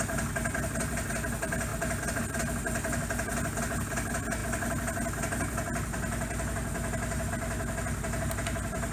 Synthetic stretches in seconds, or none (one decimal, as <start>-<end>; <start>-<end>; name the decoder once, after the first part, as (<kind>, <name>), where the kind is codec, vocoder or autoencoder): none